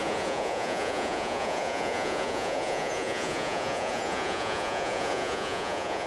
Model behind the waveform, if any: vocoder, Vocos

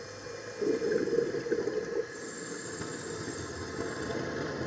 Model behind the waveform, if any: none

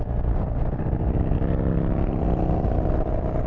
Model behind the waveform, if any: none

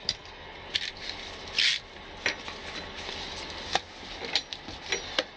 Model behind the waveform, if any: none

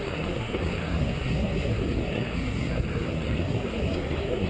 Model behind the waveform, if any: codec, SNAC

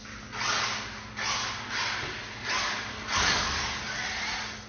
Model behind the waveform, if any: none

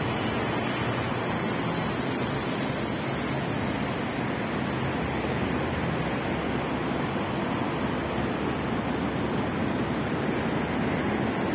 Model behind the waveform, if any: none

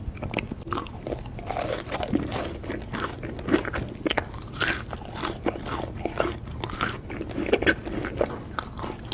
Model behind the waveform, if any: none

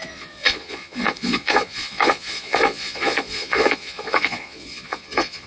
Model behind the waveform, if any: vocoder, Vocos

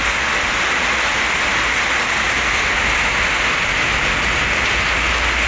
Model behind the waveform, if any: none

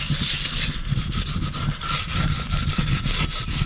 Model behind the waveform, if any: none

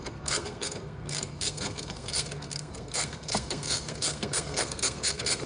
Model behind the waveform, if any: codec, SNAC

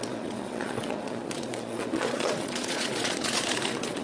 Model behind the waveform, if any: vocoder, Vocos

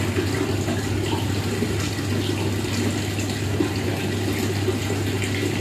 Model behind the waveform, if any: none